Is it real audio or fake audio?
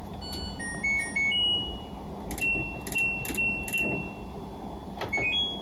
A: real